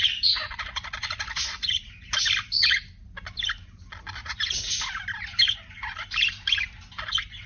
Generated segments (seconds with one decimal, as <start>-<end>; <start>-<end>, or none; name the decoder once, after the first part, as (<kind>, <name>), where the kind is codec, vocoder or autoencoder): 0.4-1.9 (vocoder, Vocos); 4.2-4.8